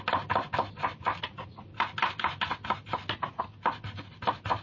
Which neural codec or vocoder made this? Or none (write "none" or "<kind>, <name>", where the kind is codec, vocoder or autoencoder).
none